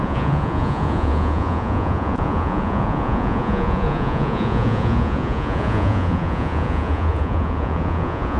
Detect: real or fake fake